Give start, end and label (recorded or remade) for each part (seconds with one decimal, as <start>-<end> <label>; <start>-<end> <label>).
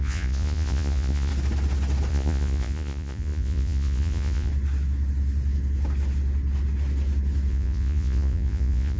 0.0-1.3 remade; 1.3-2.1 recorded; 2.1-4.5 remade; 4.5-7.5 recorded; 7.5-9.0 remade